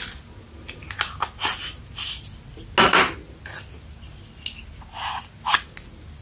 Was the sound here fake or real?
real